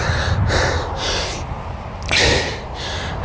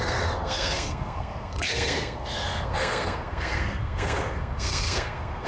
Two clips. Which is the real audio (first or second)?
first